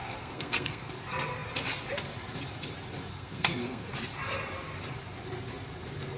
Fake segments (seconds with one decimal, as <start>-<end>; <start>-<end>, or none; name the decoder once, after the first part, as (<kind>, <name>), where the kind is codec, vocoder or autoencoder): 0.0-0.9 (codec, SNAC); 3.1-3.9